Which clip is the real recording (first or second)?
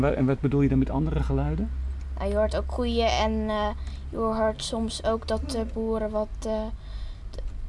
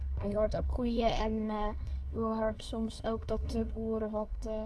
first